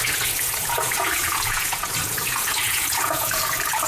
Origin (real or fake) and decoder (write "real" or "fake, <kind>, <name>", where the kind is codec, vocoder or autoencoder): fake, vocoder, Vocos